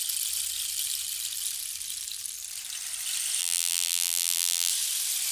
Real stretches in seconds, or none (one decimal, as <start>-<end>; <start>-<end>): 0.0-3.4; 4.7-5.3